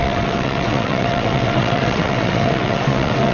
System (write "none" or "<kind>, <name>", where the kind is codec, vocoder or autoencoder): vocoder, WaveNeXt